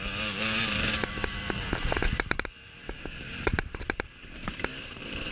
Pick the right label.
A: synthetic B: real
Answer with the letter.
A